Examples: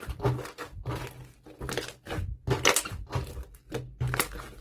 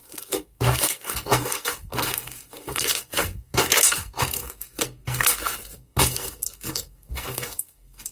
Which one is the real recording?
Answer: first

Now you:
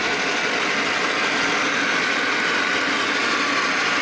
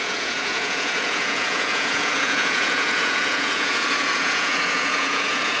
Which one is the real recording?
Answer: first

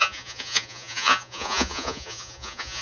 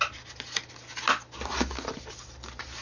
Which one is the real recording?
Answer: second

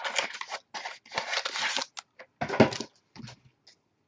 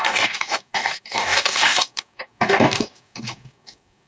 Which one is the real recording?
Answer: first